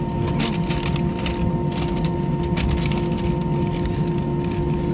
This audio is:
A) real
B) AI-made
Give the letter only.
A